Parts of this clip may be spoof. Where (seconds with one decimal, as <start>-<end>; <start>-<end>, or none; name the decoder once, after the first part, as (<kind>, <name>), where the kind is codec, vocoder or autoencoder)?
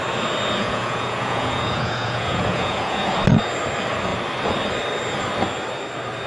0.6-3.1 (vocoder, Vocos)